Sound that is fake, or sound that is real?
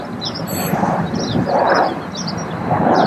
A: fake